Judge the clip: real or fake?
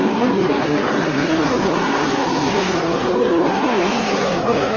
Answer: fake